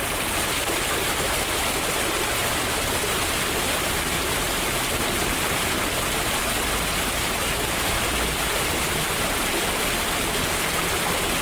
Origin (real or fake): real